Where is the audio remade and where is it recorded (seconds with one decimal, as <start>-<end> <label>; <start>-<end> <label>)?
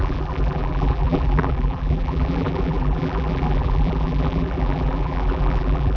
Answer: 0.0-6.0 remade